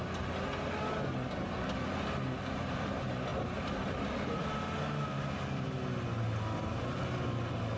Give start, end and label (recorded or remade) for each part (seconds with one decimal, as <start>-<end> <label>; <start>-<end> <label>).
0.0-7.8 recorded